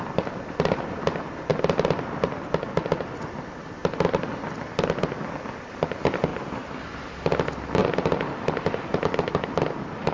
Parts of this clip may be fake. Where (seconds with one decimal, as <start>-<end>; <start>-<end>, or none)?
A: 6.3-6.8